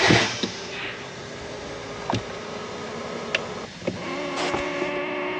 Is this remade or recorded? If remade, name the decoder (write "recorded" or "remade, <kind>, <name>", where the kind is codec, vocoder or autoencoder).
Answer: recorded